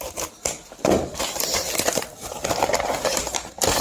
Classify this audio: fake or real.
fake